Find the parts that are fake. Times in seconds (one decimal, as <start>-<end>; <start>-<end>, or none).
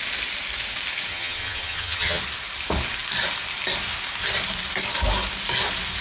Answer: 1.1-2.2